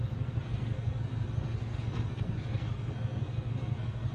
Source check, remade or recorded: remade